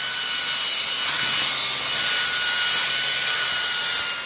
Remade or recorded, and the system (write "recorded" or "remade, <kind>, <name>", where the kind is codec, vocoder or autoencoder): recorded